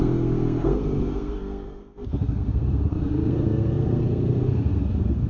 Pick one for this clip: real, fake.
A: fake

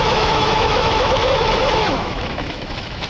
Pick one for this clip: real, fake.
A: fake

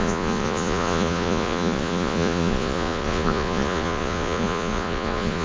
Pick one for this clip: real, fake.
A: fake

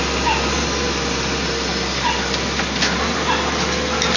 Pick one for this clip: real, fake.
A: real